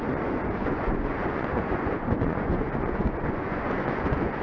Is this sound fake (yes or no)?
yes